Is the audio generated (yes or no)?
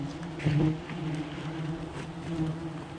no